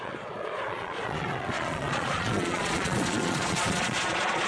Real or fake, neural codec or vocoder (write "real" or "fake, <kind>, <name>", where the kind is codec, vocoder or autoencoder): fake, vocoder, Vocos